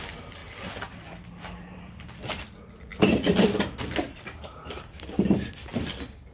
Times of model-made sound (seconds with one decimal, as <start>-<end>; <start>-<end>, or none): 0.4-2.4; 2.9-5.8